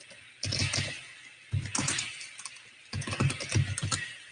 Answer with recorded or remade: recorded